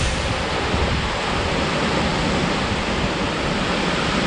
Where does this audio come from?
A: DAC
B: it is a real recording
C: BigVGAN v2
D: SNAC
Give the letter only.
B